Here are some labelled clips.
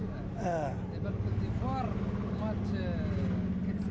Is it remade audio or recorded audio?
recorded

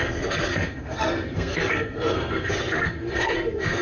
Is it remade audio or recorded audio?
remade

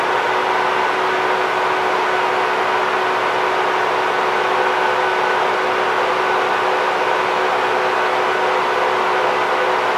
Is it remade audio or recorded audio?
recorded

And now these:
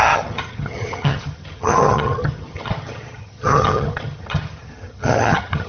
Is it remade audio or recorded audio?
remade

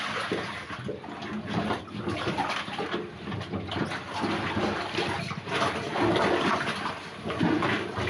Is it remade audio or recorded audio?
recorded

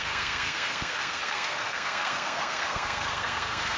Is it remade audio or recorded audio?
remade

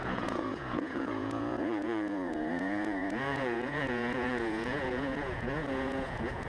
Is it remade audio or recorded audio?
remade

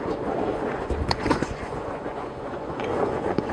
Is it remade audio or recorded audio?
remade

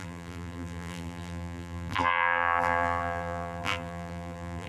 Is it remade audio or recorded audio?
remade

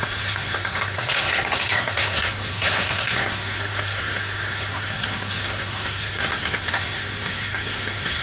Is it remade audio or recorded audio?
remade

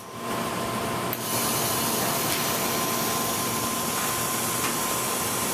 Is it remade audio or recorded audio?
recorded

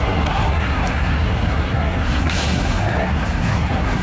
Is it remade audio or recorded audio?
remade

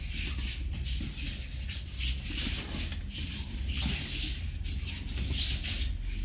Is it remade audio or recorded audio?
recorded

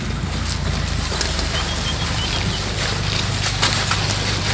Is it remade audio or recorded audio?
recorded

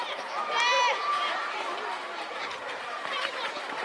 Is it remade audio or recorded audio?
remade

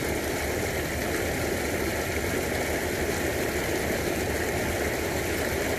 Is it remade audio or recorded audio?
recorded